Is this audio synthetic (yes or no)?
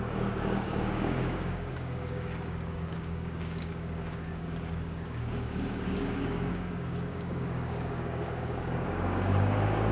yes